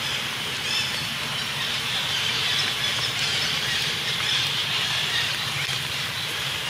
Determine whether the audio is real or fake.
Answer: fake